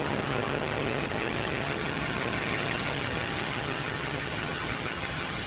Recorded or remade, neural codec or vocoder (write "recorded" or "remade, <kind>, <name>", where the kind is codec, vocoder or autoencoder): remade, vocoder, HiFi-GAN